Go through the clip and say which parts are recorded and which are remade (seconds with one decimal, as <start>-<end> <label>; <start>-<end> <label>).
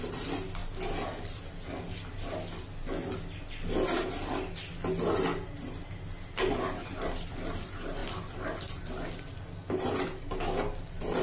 0.0-11.2 recorded